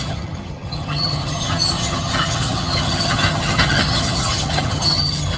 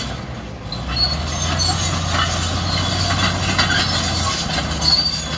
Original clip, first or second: second